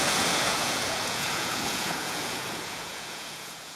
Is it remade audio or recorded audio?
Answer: remade